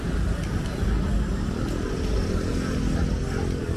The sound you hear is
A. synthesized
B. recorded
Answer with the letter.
B